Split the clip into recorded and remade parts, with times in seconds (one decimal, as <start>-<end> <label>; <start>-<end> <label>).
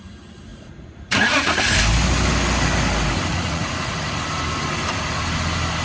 0.0-0.5 recorded; 0.5-1.6 remade; 1.6-3.3 recorded; 3.3-4.0 remade; 4.0-5.8 recorded